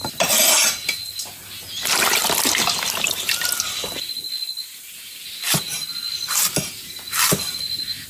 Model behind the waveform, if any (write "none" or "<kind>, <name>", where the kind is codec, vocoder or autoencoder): none